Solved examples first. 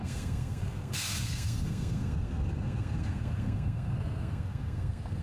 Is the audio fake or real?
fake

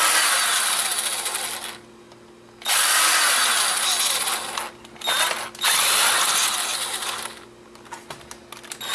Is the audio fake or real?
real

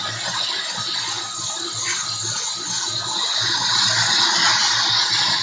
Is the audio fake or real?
real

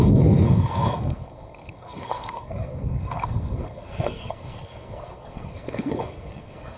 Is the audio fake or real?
fake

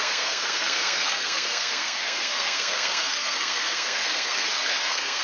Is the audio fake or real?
fake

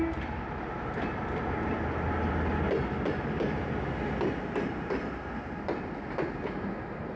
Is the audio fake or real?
real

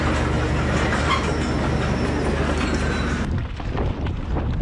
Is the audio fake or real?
real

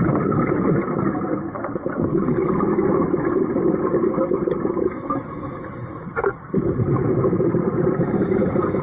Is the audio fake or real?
real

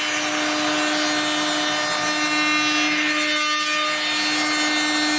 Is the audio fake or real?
real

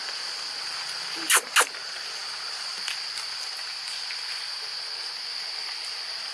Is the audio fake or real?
real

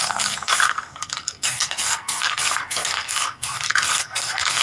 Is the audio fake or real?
fake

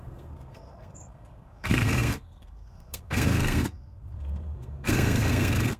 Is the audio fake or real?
fake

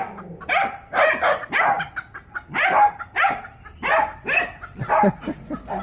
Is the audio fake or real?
real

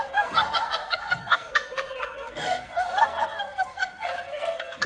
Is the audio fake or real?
fake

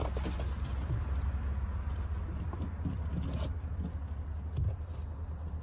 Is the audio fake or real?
real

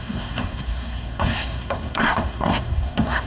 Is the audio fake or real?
fake